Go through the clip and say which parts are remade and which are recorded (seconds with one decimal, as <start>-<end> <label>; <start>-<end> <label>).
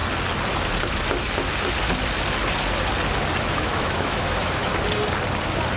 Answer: 0.0-3.5 recorded; 3.5-4.7 remade; 4.7-5.8 recorded